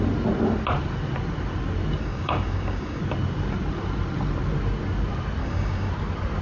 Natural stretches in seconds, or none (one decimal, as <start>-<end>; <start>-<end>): 0.0-2.0; 3.0-5.4; 5.9-6.4